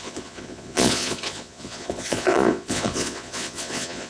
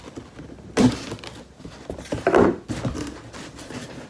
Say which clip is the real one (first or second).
second